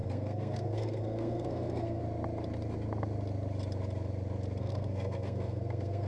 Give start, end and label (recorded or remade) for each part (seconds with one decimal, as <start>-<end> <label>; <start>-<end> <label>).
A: 0.0-2.0 remade; 2.0-4.6 recorded; 4.6-6.1 remade